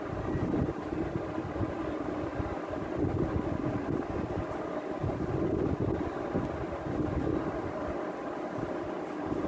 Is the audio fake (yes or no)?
no